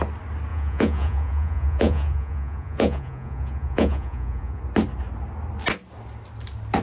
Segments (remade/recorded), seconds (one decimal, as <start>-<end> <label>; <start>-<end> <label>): 0.0-0.5 recorded; 0.5-4.6 remade; 4.6-6.8 recorded